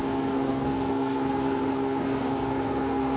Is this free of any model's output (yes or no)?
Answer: no